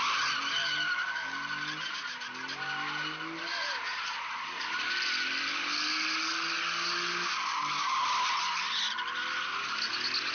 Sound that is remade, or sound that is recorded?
recorded